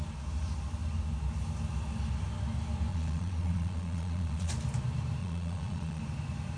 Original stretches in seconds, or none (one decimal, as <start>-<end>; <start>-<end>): 0.0-2.9; 4.5-5.2; 6.0-6.6